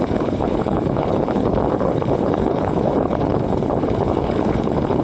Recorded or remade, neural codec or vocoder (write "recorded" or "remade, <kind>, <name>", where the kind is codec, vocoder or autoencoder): remade, codec, HILCodec